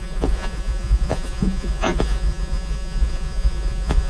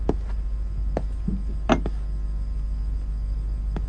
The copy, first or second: first